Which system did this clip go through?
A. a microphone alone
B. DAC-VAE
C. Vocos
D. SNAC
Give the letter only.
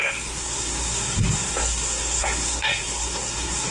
D